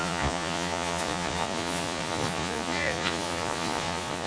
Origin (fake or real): fake